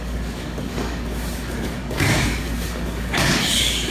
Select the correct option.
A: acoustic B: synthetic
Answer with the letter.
B